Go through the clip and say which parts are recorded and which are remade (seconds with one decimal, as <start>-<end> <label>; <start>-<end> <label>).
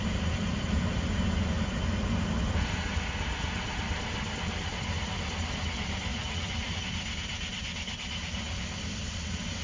0.0-6.1 recorded; 6.1-6.7 remade; 6.7-9.6 recorded